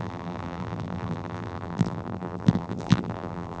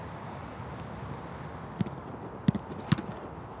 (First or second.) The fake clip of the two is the first